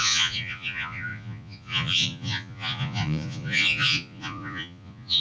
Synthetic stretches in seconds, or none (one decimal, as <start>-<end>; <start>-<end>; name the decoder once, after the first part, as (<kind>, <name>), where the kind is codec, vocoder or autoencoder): 0.0-5.2 (vocoder, Vocos)